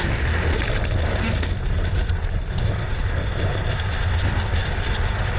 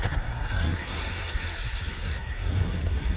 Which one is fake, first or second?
second